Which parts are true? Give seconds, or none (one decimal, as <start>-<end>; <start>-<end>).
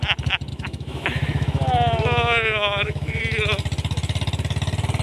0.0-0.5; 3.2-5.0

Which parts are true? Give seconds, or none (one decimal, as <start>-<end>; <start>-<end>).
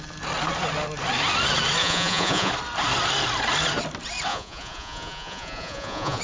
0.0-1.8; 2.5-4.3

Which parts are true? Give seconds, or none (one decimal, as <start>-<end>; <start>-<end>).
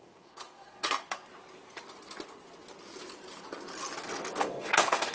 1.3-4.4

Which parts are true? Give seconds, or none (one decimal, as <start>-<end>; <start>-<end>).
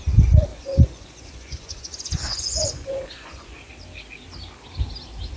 0.0-0.5; 3.7-5.4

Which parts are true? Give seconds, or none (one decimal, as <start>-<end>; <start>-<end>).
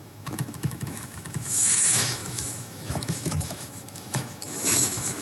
none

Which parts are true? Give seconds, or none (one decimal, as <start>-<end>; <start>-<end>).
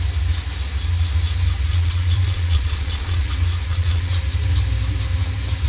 0.0-1.7; 3.3-3.7; 4.2-5.7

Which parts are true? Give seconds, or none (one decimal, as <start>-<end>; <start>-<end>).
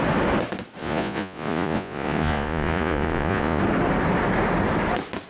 0.0-0.8; 3.6-5.3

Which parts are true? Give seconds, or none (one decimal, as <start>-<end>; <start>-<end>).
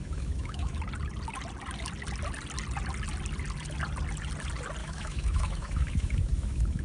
0.8-4.8